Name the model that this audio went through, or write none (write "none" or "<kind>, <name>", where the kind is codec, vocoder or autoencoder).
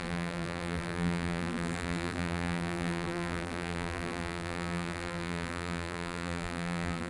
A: vocoder, BigVGAN v2